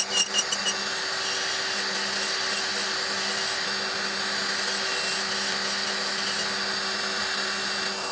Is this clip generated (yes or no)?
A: no